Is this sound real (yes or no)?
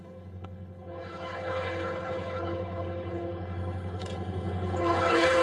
no